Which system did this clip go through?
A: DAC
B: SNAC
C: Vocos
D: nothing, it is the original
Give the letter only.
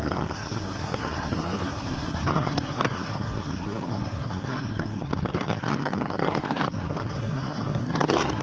B